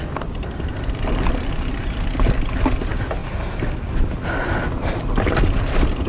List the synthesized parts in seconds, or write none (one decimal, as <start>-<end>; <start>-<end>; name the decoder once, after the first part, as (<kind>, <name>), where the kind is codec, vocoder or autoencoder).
none